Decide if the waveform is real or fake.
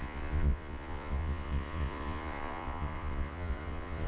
fake